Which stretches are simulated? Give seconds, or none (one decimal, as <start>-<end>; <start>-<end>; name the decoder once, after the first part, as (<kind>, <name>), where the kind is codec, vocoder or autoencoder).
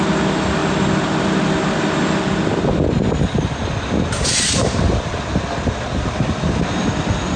none